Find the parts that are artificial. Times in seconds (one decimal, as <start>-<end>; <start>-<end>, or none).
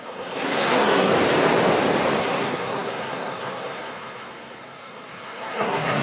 0.0-1.1; 2.2-6.0